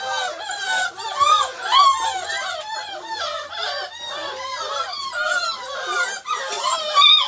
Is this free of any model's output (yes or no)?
yes